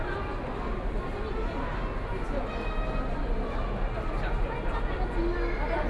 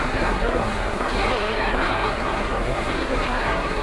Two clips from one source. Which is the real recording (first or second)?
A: first